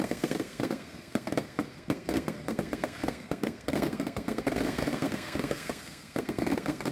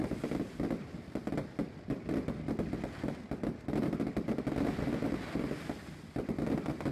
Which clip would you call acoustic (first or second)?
second